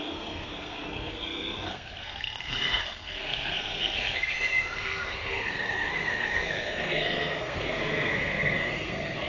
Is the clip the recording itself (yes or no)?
no